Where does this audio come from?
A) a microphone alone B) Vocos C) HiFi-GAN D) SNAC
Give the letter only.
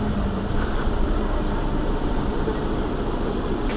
A